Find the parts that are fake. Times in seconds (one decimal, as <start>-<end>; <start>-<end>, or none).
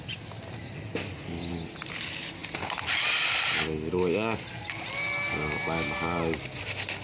none